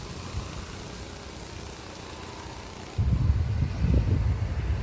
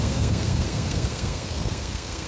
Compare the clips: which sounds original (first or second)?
first